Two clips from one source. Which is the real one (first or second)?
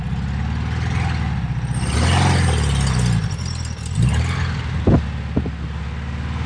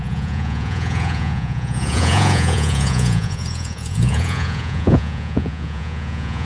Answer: first